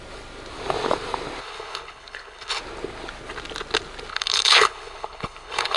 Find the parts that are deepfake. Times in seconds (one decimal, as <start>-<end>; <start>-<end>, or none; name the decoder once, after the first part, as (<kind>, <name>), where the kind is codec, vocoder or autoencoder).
1.4-2.6 (codec, HILCodec); 4.1-5.8

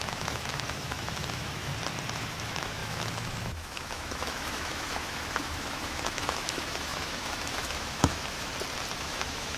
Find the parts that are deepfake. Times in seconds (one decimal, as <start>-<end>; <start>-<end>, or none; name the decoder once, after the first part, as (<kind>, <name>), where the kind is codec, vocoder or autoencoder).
0.0-1.7 (autoencoder, DAC-VAE); 2.2-8.5; 9.0-9.6

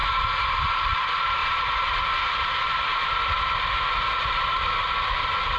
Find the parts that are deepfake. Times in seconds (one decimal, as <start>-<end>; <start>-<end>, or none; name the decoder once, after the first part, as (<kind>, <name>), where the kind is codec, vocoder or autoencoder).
none

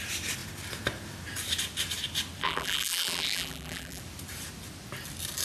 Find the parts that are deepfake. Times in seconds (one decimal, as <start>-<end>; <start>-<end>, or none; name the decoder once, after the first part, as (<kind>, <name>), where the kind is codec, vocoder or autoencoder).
2.4-4.0 (vocoder, BigVGAN v2)

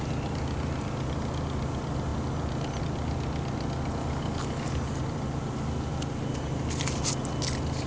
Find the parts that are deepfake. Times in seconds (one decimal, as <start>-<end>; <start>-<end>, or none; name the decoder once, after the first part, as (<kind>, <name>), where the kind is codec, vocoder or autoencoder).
4.0-5.0 (codec, DAC)

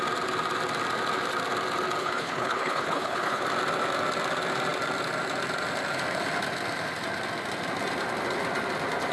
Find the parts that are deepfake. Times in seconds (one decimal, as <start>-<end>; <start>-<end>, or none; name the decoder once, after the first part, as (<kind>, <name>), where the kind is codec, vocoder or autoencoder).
2.0-3.4 (codec, HILCodec)